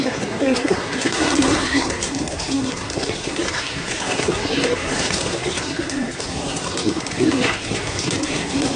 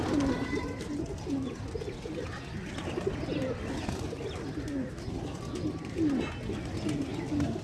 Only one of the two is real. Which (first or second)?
second